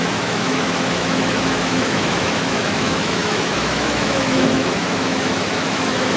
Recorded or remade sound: remade